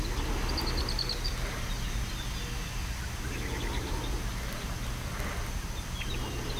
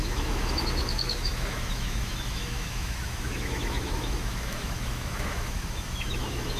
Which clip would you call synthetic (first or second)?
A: second